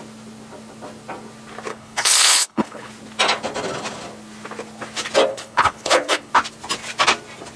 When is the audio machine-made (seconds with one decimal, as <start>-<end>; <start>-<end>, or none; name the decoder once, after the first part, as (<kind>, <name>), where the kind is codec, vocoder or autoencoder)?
1.7-2.9 (codec, HILCodec); 5.3-6.3

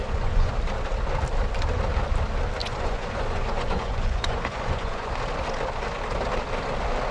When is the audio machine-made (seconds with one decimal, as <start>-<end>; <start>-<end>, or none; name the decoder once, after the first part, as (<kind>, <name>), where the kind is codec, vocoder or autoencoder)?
0.0-0.5 (vocoder, Vocos); 2.6-5.1

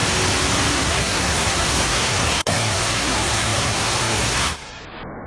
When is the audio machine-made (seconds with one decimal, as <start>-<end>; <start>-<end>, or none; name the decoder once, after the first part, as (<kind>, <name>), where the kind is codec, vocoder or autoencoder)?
0.7-4.8 (codec, SNAC)

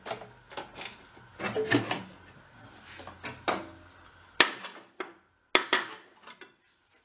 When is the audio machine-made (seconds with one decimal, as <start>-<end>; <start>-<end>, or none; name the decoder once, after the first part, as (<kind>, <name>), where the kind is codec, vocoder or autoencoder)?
none

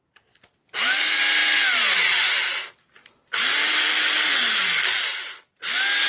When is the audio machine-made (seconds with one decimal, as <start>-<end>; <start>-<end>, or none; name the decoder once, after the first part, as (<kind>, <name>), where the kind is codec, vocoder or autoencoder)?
none

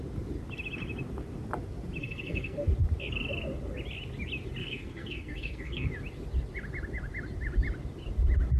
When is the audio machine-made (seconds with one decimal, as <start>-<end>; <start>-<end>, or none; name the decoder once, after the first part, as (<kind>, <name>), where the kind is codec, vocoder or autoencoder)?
2.0-2.6 (codec, SNAC); 4.6-5.9

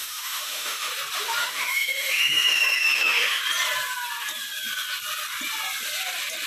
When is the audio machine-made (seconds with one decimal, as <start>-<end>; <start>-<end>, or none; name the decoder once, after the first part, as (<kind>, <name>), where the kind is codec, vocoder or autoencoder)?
0.0-0.9 (autoencoder, DAC-VAE); 1.4-3.4

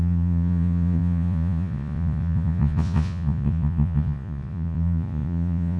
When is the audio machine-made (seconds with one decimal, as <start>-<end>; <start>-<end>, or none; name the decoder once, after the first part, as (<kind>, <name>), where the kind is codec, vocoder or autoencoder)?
0.0-5.8 (vocoder, Vocos)